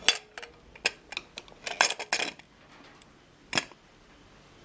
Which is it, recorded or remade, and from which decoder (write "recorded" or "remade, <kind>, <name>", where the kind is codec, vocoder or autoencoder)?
recorded